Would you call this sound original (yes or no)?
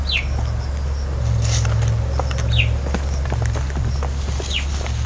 yes